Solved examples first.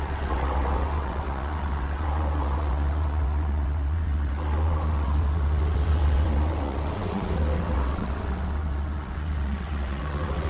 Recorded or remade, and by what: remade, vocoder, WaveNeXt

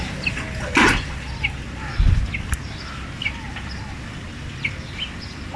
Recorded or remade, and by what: recorded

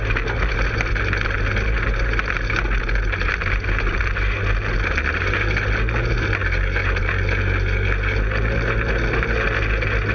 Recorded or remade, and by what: recorded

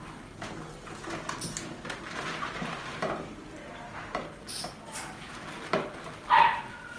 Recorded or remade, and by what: recorded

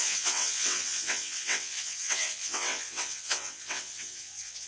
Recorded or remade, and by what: remade, vocoder, WaveNeXt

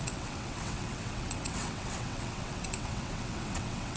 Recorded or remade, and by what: remade, vocoder, WaveNeXt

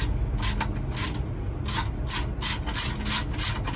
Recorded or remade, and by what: recorded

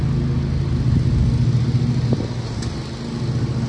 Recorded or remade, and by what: recorded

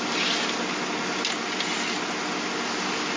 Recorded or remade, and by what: recorded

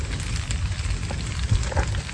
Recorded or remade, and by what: recorded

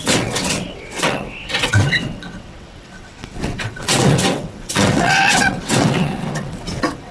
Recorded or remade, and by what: remade, vocoder, WaveNeXt